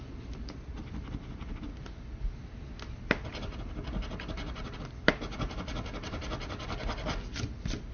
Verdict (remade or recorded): recorded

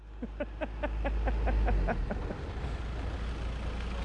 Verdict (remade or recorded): recorded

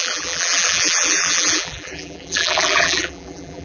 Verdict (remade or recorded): remade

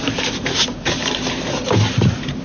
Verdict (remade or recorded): recorded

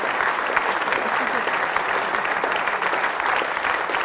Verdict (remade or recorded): recorded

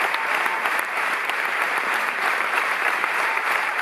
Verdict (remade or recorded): remade